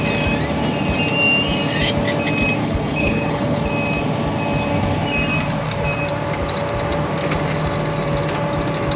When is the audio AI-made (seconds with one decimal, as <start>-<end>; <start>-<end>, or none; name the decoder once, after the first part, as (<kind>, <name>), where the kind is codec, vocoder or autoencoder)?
2.6-3.6 (codec, HILCodec)